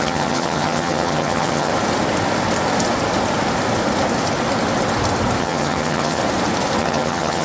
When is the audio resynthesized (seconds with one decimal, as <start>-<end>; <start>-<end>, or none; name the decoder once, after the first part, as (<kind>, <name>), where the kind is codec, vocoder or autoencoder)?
0.0-1.7 (vocoder, HiFi-GAN); 5.4-6.2; 6.8-7.4